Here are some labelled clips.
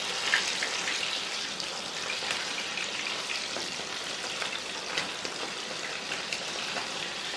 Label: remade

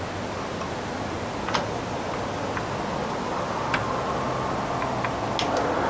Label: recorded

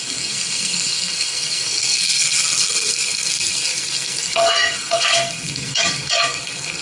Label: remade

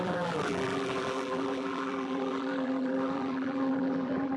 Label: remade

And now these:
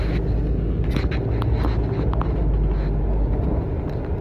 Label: recorded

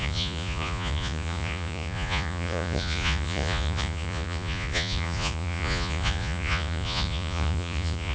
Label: remade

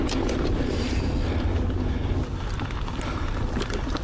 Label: recorded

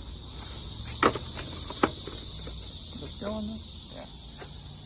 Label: recorded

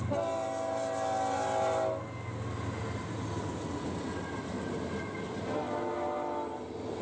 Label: recorded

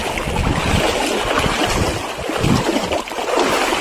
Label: recorded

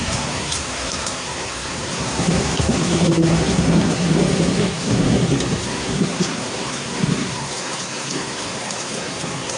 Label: remade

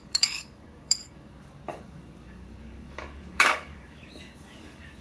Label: remade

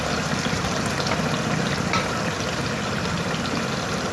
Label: recorded